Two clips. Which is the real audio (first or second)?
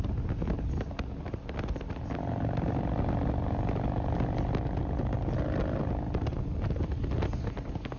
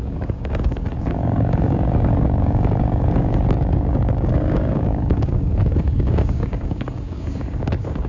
first